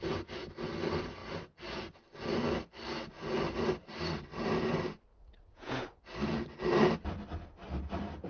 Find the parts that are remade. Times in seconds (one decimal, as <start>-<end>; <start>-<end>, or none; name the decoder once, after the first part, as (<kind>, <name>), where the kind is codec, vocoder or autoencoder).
5.1-6.0 (vocoder, Vocos)